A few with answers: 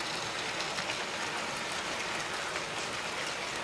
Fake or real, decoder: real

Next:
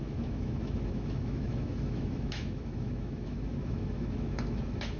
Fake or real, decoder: fake, autoencoder, DAC-VAE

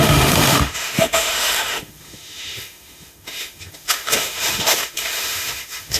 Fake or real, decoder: fake, autoencoder, DAC-VAE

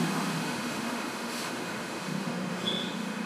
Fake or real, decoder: fake, autoencoder, DAC-VAE